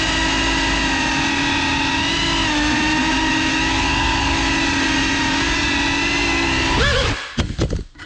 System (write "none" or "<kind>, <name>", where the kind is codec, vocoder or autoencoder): none